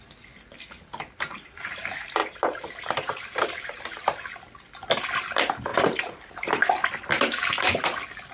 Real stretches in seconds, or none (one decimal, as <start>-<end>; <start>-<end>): 0.0-2.2; 3.8-5.7; 6.5-7.1; 7.8-8.3